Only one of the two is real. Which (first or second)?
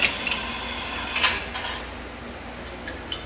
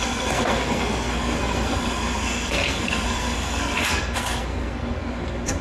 first